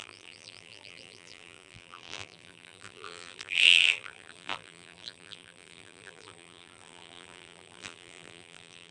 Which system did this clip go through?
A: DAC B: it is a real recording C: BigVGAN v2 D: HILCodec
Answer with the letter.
C